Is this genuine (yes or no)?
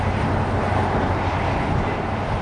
yes